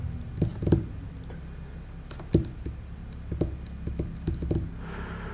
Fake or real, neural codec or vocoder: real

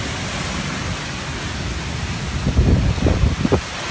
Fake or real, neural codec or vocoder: real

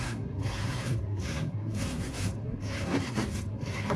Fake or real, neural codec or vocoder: fake, codec, SNAC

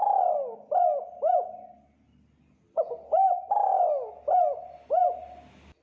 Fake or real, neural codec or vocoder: real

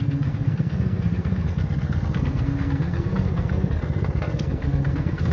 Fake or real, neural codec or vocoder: fake, codec, SNAC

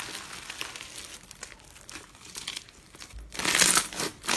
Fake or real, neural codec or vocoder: real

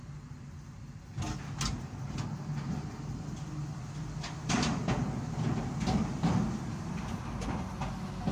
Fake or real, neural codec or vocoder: real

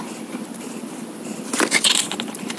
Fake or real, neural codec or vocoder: real